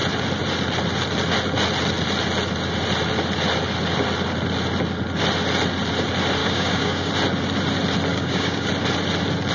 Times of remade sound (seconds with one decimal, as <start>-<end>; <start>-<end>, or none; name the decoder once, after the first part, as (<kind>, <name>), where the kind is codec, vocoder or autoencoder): 6.4-7.1 (codec, DAC); 8.1-8.7

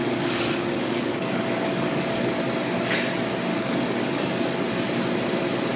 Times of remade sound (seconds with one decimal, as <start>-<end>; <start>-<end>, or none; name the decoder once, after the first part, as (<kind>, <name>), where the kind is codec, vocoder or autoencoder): 0.0-2.4 (codec, DAC); 3.5-4.4

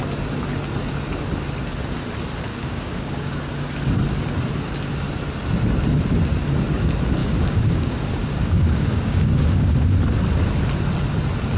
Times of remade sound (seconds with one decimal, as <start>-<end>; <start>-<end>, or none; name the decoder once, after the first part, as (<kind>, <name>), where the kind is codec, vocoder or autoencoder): 2.5-3.4 (codec, DAC); 7.2-9.9

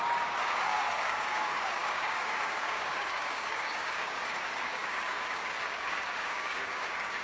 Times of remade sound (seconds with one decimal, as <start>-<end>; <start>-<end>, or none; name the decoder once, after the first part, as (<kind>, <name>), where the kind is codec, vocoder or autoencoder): 0.0-7.2 (codec, DAC)

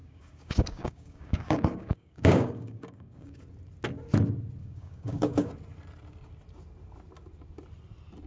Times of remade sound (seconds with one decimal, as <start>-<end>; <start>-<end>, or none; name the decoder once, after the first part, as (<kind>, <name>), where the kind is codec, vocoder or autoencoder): 0.0-3.4 (codec, DAC); 4.6-5.5